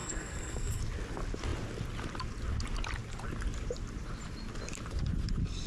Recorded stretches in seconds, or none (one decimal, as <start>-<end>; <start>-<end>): 0.8-5.7